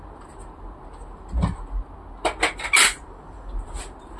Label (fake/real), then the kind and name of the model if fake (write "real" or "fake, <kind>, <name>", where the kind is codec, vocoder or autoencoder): real